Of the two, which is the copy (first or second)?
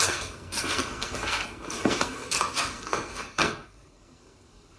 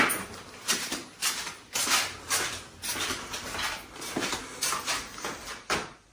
first